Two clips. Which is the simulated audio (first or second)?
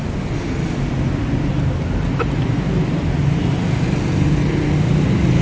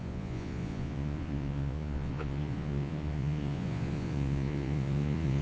second